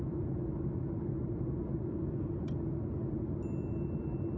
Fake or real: real